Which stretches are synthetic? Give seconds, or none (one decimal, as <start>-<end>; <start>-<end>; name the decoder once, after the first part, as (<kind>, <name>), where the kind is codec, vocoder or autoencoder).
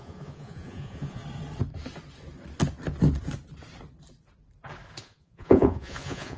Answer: 0.0-1.2 (vocoder, Vocos); 5.0-6.4